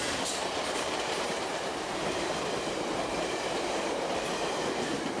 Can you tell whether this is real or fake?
fake